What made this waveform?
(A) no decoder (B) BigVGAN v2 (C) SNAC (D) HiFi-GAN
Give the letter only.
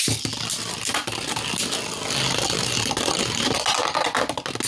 A